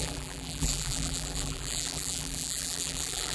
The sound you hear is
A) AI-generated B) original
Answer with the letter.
A